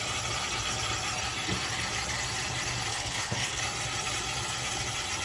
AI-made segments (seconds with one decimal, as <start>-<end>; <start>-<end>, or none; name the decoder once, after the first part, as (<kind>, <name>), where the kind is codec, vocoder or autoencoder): 2.9-3.6 (codec, HILCodec)